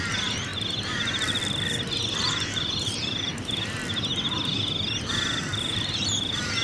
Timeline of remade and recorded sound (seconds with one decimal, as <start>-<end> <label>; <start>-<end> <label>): 0.0-0.5 remade; 0.5-1.9 recorded; 1.9-3.3 remade; 3.3-5.6 recorded; 5.6-6.6 remade